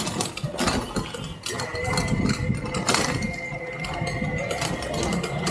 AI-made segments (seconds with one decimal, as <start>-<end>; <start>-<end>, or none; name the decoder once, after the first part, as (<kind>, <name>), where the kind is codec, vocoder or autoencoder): none